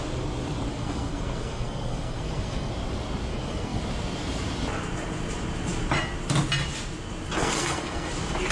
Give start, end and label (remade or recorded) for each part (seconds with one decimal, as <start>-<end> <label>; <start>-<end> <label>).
0.0-0.7 recorded; 0.7-2.7 remade; 2.7-3.3 recorded; 3.3-3.8 remade; 3.8-7.4 recorded; 7.4-8.1 remade; 8.1-8.5 recorded